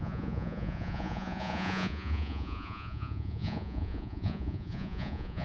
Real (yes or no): no